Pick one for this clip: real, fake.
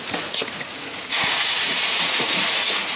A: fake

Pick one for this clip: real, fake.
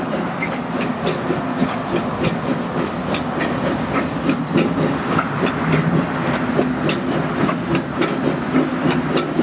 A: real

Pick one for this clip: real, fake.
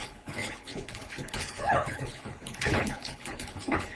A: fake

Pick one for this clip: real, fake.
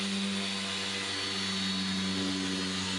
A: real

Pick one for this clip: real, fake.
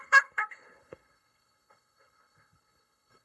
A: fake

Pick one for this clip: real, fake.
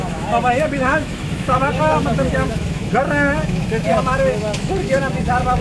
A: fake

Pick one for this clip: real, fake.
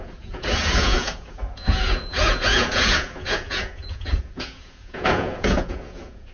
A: fake